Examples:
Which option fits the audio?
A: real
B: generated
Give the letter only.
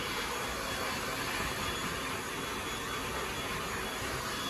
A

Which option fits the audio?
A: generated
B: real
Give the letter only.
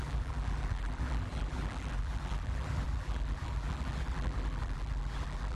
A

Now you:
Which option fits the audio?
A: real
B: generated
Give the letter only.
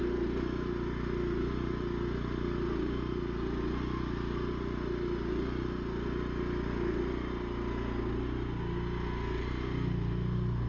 A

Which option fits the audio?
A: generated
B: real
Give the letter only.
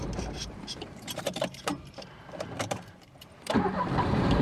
A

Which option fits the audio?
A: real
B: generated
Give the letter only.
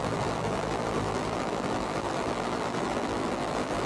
B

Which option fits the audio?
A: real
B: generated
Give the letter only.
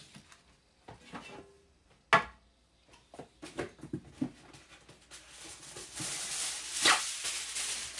A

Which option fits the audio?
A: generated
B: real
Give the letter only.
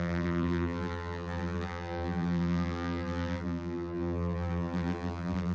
A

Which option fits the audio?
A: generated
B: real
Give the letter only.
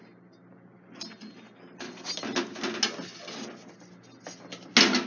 B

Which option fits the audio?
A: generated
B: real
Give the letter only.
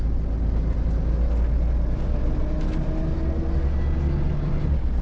B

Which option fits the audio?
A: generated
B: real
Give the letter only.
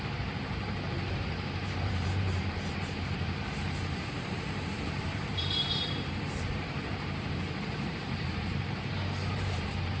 A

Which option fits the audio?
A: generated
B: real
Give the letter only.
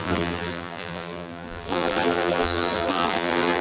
A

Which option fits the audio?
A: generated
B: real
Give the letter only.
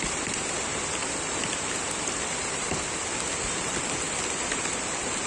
A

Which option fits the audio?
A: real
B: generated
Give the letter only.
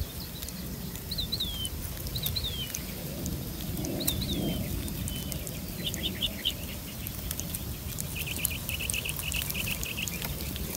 A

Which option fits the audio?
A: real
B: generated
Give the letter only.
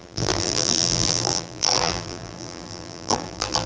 B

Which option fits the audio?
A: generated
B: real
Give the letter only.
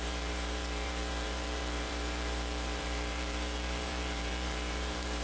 A